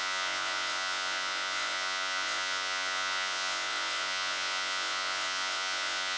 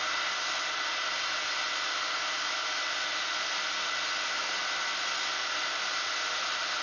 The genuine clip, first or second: second